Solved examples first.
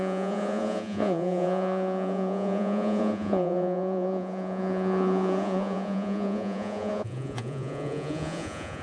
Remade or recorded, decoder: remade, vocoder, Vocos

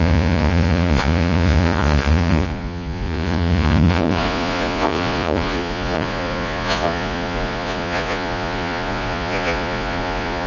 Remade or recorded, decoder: remade, vocoder, Vocos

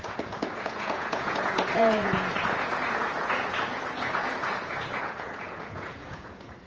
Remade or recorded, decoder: remade, vocoder, Vocos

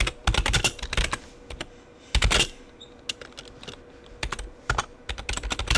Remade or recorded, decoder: recorded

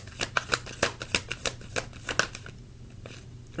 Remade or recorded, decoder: recorded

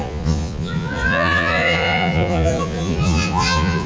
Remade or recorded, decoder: remade, vocoder, Vocos